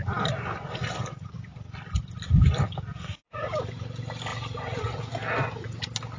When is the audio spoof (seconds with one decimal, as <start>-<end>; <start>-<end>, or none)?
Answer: 0.0-3.7; 4.3-5.0